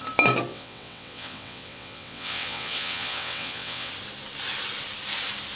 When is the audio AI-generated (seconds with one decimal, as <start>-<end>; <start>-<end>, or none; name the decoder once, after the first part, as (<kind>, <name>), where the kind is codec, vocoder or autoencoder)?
0.5-3.9 (vocoder, WaveNeXt)